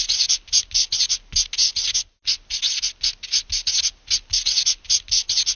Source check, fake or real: real